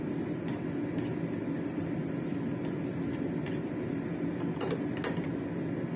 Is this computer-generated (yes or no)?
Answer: no